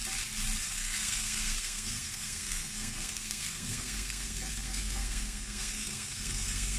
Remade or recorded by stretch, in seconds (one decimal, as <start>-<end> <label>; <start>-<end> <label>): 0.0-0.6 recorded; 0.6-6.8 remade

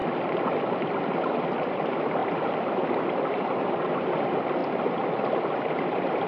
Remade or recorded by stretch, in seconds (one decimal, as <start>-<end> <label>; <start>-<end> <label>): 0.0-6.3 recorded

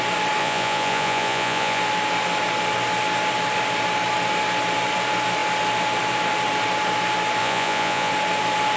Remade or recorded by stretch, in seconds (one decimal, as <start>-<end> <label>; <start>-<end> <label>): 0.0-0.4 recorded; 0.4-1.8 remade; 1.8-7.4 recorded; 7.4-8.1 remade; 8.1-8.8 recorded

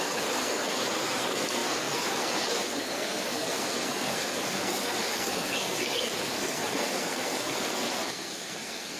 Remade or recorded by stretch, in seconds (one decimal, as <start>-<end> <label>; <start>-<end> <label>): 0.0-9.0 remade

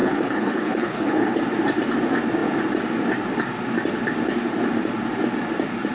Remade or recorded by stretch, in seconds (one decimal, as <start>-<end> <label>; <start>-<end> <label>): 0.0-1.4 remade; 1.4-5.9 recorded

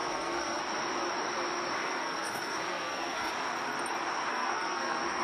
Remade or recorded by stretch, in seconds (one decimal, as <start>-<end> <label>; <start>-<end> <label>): 0.0-0.6 remade; 0.6-1.8 recorded; 1.8-3.3 remade; 3.3-4.3 recorded; 4.3-5.2 remade

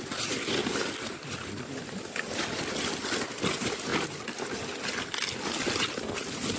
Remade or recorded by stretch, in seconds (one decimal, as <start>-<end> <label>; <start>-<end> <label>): 0.0-6.6 recorded

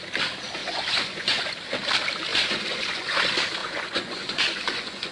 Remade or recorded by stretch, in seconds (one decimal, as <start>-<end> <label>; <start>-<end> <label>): 0.0-0.6 recorded; 0.6-1.5 remade; 1.5-2.3 recorded; 2.3-3.2 remade; 3.2-3.6 recorded; 3.6-5.1 remade